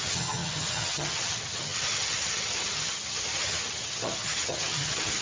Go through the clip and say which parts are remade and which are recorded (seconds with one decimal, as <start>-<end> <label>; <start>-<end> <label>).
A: 0.0-5.2 remade